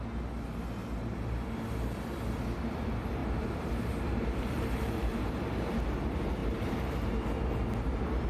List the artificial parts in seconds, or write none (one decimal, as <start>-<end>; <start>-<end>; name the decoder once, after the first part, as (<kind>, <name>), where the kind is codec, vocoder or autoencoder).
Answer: 0.8-1.5 (vocoder, BigVGAN v2); 3.2-5.3; 6.4-7.2